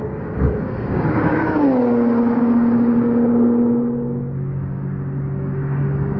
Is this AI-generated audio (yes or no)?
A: yes